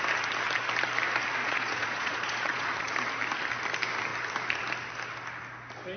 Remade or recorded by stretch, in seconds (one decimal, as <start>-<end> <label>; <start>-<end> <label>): 0.0-1.4 recorded; 1.4-2.9 remade; 2.9-6.0 recorded